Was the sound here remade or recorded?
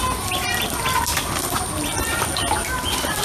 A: remade